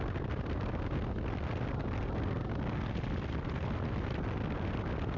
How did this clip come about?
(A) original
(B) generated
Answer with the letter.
A